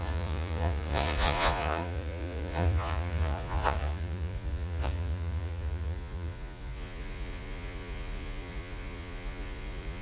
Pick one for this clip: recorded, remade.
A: remade